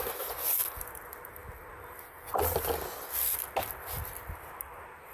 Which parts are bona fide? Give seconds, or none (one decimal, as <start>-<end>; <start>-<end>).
0.0-5.1